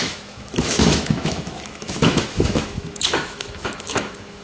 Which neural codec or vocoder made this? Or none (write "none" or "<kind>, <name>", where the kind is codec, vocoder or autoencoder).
autoencoder, DAC-VAE